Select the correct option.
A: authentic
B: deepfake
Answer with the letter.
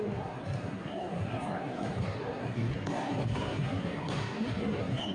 B